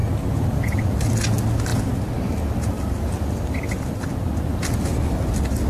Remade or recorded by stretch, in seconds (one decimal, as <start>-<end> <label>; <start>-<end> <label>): 0.0-5.7 recorded